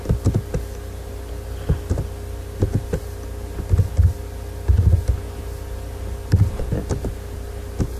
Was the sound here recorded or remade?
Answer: recorded